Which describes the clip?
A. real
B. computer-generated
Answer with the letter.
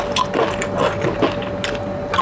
A